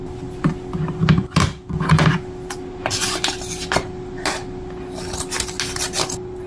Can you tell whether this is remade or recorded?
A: recorded